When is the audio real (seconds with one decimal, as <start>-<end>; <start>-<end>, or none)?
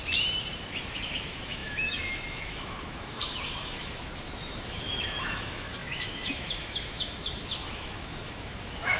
0.0-0.7